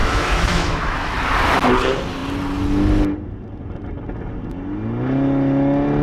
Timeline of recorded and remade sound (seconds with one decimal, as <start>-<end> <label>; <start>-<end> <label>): 0.0-1.1 remade; 1.1-6.0 recorded